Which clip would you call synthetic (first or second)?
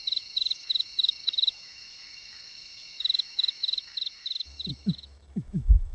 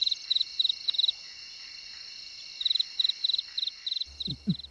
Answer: first